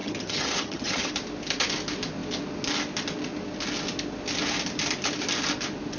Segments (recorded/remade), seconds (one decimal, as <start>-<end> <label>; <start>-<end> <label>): 0.0-1.1 remade; 1.1-6.0 recorded